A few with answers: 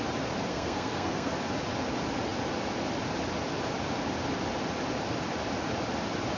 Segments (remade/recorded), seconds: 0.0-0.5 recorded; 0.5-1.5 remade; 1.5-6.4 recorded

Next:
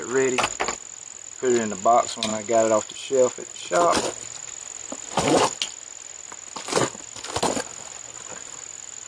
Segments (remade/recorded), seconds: 0.0-9.1 recorded

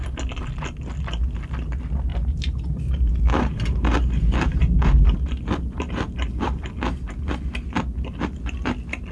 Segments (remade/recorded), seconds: 0.0-2.1 recorded; 2.1-6.6 remade; 6.6-9.1 recorded

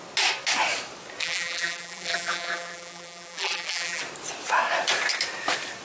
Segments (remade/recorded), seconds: 0.0-1.2 recorded; 1.2-4.0 remade; 4.0-5.8 recorded

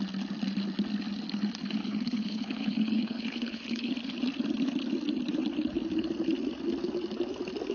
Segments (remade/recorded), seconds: 0.0-1.8 recorded; 1.8-3.9 remade; 3.9-7.7 recorded

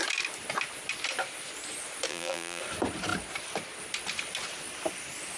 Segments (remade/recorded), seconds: 0.0-2.1 recorded; 2.1-2.6 remade; 2.6-5.4 recorded

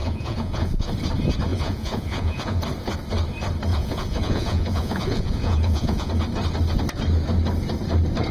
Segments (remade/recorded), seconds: 0.0-0.9 remade; 0.9-1.5 recorded; 1.5-2.6 remade; 2.6-3.7 recorded; 3.7-6.1 remade; 6.1-8.3 recorded

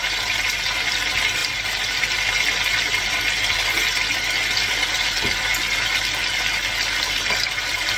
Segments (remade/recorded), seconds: 0.0-8.0 recorded